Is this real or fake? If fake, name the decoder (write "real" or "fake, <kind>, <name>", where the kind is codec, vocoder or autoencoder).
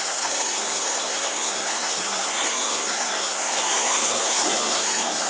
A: fake, codec, SNAC